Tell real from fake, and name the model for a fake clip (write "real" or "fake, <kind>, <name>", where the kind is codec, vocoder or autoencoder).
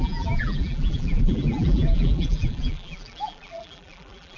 fake, vocoder, BigVGAN v2